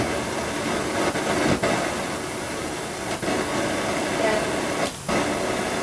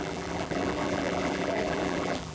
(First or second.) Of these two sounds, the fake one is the second